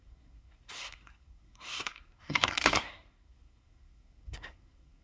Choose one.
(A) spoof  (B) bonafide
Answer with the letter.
A